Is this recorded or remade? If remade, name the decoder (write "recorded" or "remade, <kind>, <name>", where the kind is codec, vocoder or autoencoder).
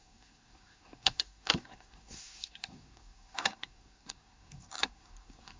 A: remade, codec, SNAC